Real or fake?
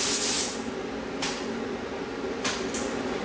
real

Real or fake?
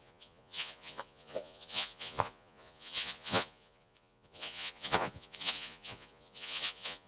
fake